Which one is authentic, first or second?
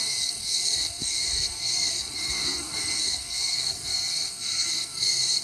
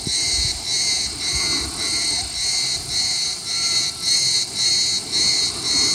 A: second